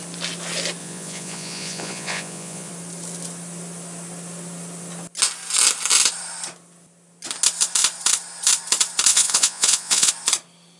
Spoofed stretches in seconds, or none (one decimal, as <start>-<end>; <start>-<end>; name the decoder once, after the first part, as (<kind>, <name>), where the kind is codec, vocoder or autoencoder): 0.8-2.7 (vocoder, Vocos); 9.1-10.1